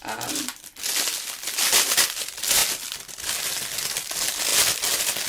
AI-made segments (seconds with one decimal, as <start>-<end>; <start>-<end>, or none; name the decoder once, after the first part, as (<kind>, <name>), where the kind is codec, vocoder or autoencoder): none